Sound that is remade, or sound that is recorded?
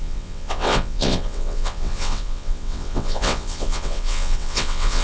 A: remade